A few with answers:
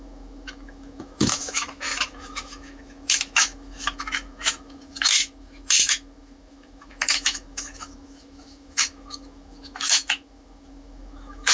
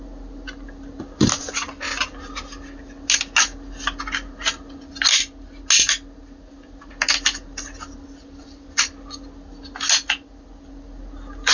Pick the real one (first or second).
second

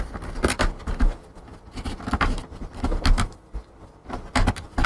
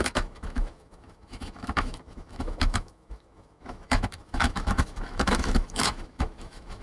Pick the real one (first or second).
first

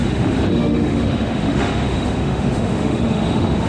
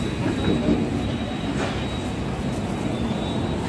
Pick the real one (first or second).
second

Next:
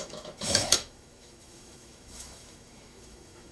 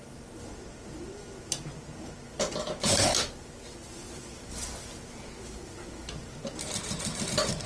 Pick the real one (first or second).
second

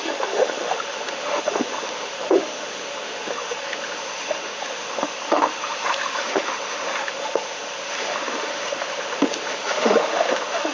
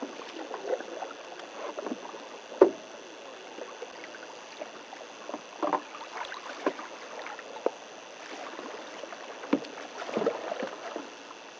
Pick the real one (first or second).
second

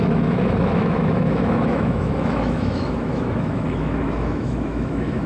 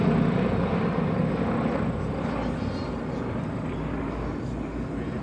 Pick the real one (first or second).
second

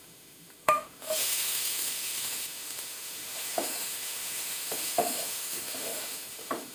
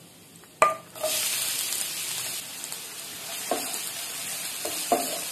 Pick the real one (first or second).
second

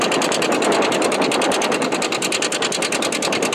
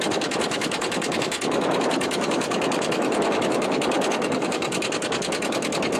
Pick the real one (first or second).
first